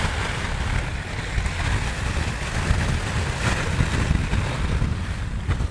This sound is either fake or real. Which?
real